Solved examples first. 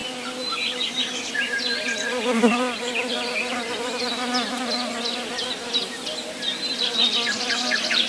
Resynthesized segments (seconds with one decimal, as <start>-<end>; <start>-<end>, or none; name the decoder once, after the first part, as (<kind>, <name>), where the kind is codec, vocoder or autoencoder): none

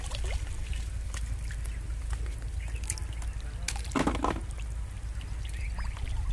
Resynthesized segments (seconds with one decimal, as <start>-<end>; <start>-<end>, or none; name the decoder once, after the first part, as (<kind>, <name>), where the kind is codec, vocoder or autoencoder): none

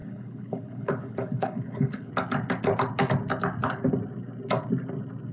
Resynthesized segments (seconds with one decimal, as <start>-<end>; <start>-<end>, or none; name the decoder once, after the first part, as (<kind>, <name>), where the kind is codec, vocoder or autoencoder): 0.0-2.1 (codec, HILCodec)

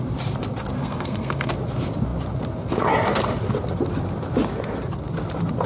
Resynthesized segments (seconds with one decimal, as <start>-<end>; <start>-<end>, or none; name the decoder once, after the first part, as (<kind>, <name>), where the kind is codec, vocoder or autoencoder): 0.8-1.5 (codec, SNAC)